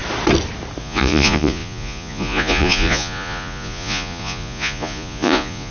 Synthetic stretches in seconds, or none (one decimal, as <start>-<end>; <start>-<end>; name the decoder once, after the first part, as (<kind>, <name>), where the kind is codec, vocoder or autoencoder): 0.8-5.7 (vocoder, Vocos)

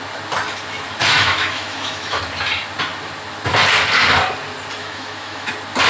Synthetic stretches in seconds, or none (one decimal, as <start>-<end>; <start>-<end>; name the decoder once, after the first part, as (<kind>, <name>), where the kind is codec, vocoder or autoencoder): 1.0-2.2 (autoencoder, DAC-VAE); 4.8-5.5

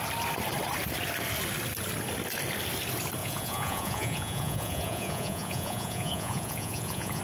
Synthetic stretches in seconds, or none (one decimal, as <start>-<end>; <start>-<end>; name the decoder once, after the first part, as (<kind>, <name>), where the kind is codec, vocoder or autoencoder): 3.2-7.2 (vocoder, Vocos)